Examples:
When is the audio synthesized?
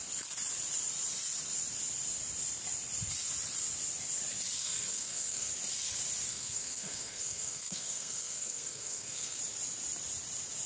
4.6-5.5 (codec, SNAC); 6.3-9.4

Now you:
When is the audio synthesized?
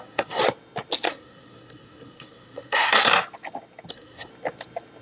0.0-0.4 (codec, SNAC); 1.1-3.1; 3.9-4.3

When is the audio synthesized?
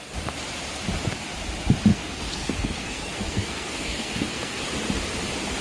1.9-4.6 (codec, SNAC)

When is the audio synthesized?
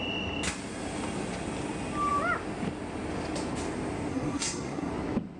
4.1-4.9 (codec, SNAC)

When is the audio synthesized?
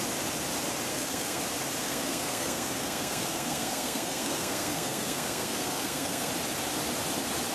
0.9-1.4 (codec, SNAC); 1.8-6.3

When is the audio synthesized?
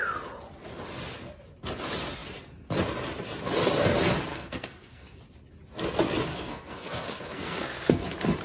4.3-5.2 (codec, SNAC); 6.3-8.0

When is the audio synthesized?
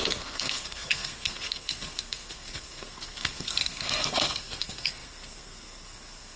0.0-6.4 (codec, SNAC)